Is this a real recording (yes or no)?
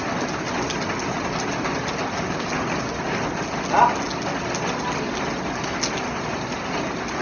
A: yes